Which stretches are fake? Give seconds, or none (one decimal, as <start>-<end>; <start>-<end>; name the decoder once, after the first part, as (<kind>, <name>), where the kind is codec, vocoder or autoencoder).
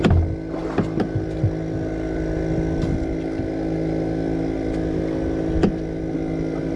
none